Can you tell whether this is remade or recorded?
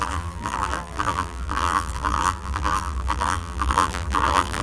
remade